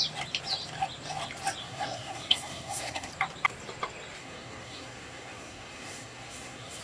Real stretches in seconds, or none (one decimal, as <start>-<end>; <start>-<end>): 0.0-1.6; 3.1-4.2